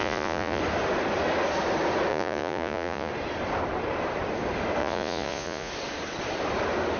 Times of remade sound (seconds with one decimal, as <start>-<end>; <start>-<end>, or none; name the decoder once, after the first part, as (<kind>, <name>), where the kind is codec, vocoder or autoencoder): 0.0-0.6 (vocoder, Vocos); 2.1-3.1; 4.8-5.7